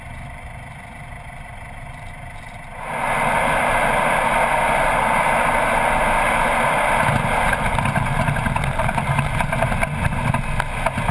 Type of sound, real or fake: real